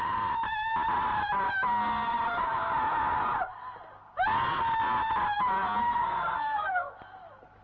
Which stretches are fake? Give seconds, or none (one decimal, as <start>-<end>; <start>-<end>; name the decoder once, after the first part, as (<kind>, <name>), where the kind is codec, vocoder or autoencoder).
5.8-6.9 (codec, SNAC)